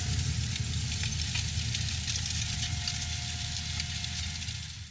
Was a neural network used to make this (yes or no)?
no